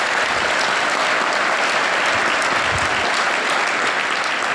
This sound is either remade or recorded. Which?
recorded